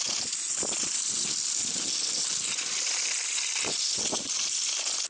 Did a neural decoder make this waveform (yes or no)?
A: no